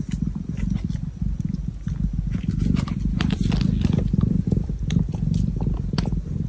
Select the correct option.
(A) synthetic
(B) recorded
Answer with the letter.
B